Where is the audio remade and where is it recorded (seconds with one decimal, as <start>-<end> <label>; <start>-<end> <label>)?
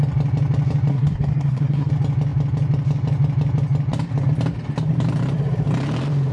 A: 0.0-0.9 recorded; 0.9-1.9 remade; 1.9-6.3 recorded